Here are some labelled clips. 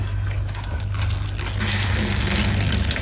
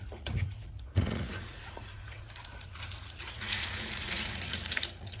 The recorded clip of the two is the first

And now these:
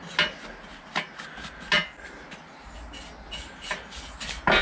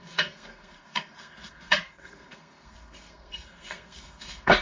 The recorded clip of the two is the first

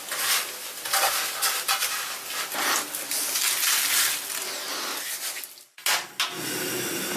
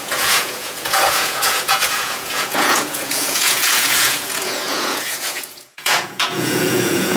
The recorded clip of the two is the first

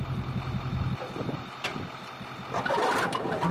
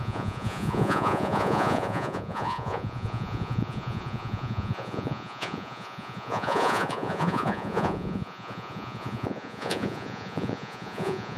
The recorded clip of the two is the first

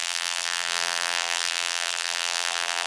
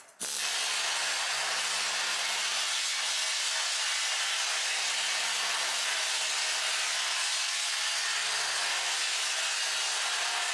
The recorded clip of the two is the second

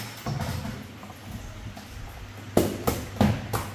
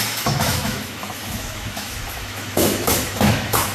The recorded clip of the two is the first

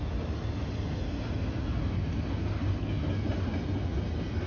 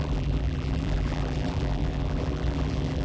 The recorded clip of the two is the first